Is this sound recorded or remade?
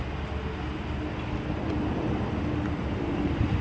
recorded